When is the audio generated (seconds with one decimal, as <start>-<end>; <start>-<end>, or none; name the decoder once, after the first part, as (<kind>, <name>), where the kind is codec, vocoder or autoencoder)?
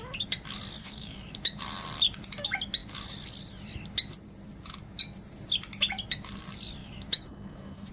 0.8-1.6 (autoencoder, DAC-VAE); 6.8-7.9